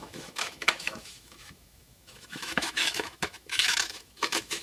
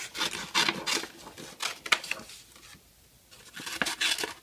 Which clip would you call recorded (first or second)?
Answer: second